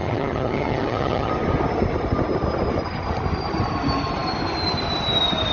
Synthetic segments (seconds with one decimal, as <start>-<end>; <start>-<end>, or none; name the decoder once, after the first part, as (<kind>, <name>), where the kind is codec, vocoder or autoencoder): 0.0-1.3 (vocoder, HiFi-GAN)